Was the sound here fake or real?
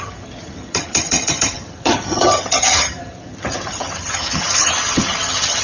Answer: fake